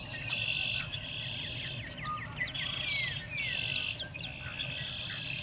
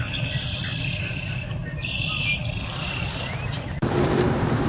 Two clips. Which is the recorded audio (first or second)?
first